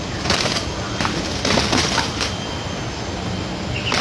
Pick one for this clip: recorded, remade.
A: recorded